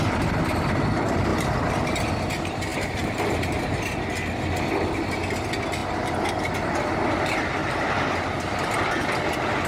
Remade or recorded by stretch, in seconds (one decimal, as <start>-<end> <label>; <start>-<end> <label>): 0.0-2.7 recorded; 2.7-4.0 remade; 4.0-7.6 recorded; 7.6-8.1 remade; 8.1-9.7 recorded